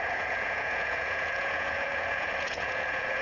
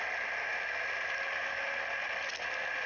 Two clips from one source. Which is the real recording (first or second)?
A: second